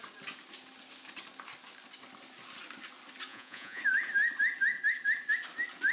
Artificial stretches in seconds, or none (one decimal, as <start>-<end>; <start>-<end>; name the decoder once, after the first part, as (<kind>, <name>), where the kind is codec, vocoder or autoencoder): 3.3-3.8 (vocoder, Vocos)